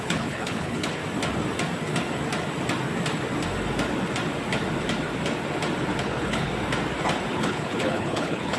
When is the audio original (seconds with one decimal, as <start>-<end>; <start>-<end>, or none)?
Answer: 1.0-6.0; 6.5-7.3